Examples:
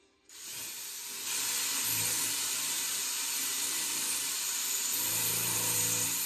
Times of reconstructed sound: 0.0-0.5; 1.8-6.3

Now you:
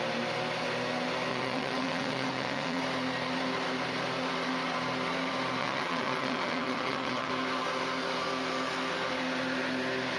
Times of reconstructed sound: 1.3-2.8; 5.6-7.3

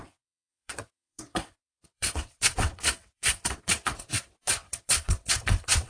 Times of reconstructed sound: 0.0-5.9

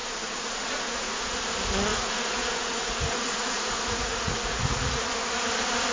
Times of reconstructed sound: 0.0-1.3; 1.9-5.0